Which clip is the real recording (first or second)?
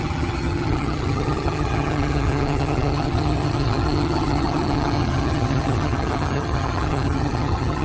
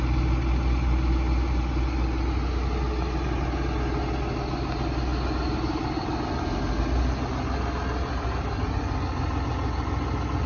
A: second